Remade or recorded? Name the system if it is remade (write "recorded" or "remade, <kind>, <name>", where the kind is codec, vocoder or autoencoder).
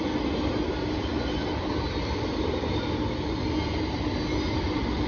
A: recorded